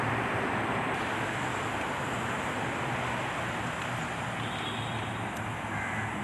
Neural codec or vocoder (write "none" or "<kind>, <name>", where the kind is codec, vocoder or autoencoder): none